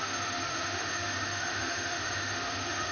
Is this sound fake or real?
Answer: fake